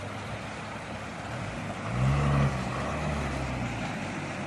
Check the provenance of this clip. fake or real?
real